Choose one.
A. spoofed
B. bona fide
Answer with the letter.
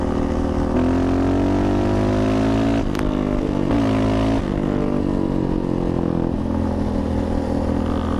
B